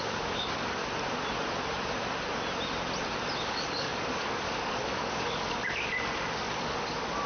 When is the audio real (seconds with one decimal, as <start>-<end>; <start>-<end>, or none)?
0.8-3.4